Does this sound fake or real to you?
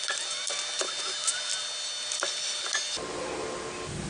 real